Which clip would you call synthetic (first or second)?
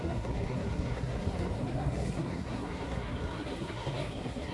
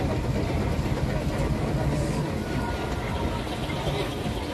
first